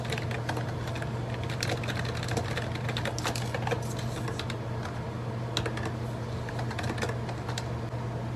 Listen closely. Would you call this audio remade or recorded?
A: recorded